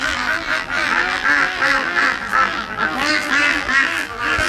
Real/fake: fake